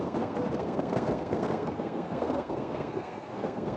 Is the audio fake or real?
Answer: fake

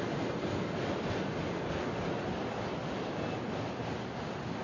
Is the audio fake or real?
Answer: real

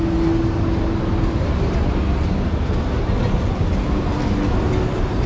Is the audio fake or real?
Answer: real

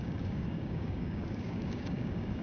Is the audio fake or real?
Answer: fake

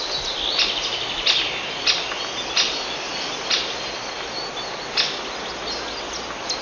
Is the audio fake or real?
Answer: real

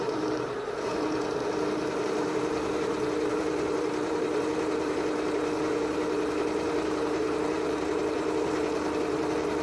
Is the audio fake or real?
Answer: fake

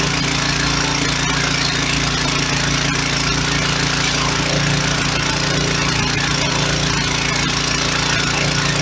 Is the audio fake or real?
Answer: real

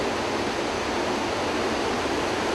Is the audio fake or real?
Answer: real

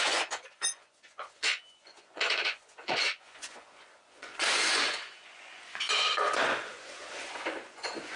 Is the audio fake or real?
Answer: fake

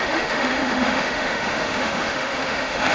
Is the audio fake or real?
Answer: fake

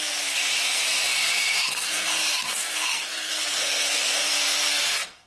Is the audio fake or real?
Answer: fake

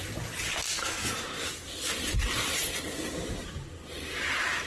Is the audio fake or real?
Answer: real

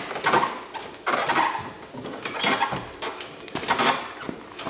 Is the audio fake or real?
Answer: real